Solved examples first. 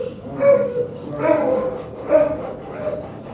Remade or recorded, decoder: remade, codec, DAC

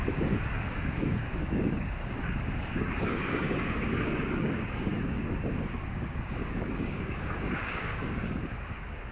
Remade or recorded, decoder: remade, codec, DAC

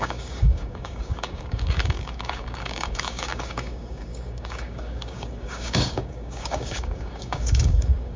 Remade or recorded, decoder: remade, codec, DAC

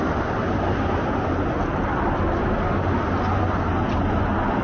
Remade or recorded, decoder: recorded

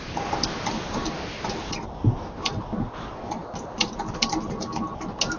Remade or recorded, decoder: recorded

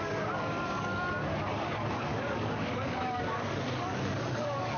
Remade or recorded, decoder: remade, codec, DAC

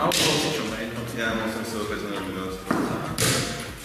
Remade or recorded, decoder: recorded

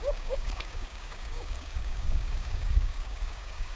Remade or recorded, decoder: remade, codec, DAC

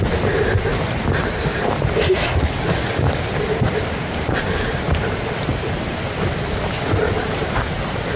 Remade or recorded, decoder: recorded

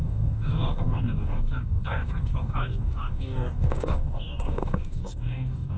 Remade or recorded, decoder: remade, codec, DAC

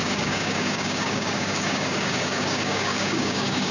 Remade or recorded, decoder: remade, codec, DAC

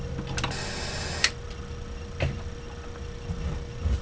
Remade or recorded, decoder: recorded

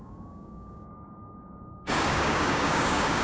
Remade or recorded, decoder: remade, codec, DAC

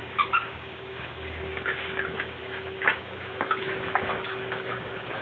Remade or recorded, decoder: remade, codec, DAC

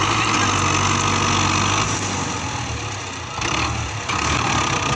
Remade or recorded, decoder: recorded